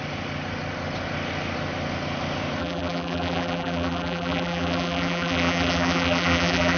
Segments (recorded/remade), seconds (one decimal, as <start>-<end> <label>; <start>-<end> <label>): 0.0-2.6 recorded; 2.6-6.8 remade